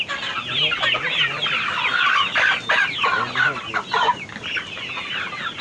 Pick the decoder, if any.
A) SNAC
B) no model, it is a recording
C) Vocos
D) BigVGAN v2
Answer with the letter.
B